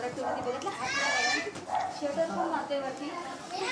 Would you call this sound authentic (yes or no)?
yes